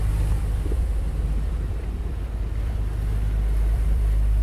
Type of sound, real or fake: fake